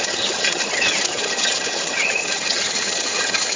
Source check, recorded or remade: remade